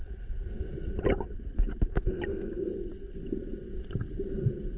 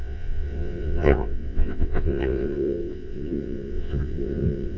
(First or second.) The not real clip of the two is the second